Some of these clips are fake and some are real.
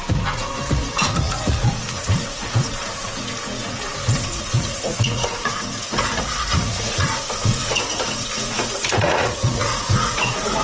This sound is fake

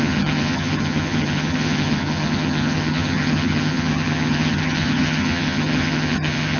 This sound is fake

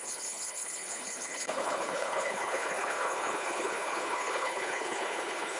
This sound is fake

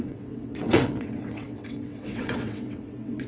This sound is fake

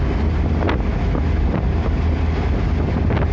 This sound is real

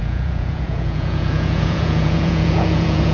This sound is fake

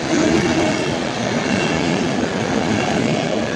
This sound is fake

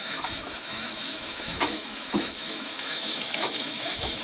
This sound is fake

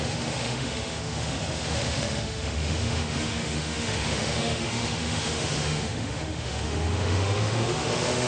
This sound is fake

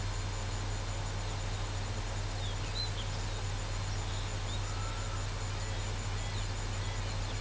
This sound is real